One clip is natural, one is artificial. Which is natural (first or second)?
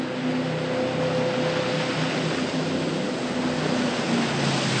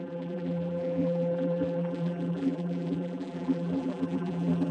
first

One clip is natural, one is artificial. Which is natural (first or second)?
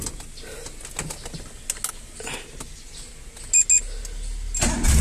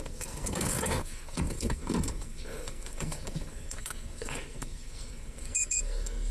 first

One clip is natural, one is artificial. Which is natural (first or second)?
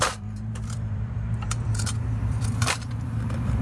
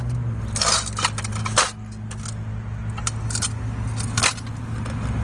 second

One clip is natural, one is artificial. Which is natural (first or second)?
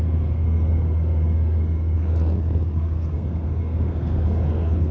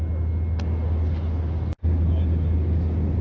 second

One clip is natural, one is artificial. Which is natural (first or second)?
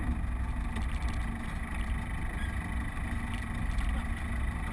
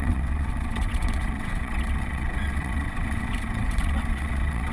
first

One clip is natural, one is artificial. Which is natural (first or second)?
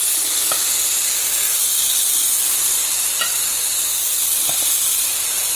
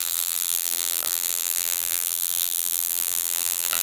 first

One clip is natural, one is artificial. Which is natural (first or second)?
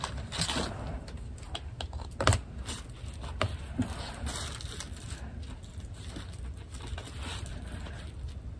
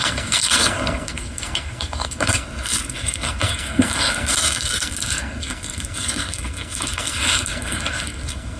first